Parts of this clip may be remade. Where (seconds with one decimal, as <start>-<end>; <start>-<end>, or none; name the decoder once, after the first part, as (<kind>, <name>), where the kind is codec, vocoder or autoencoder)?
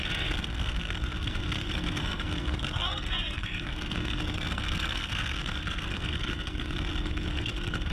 0.0-7.9 (codec, SNAC)